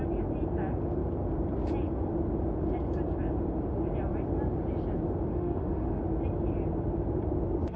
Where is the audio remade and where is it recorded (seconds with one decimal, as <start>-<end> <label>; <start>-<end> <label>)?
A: 0.0-5.3 recorded; 5.3-6.0 remade; 6.0-7.8 recorded